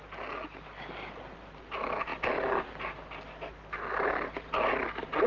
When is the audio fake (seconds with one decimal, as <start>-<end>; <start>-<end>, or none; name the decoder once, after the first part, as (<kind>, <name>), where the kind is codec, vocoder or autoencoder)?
none